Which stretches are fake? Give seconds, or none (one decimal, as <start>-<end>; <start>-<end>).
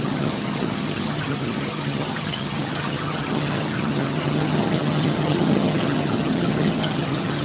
0.0-7.4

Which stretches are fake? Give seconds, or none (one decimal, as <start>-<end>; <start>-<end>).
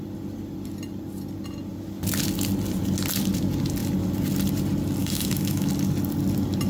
5.0-5.7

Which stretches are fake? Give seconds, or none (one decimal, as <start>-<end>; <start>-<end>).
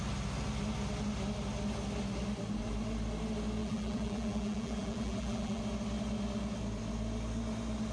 3.6-5.6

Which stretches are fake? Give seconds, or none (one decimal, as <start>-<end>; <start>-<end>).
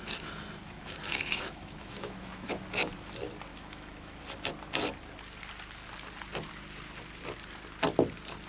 0.6-2.5; 3.5-4.2